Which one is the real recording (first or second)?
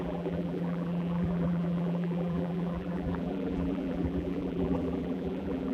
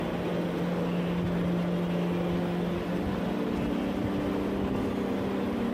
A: second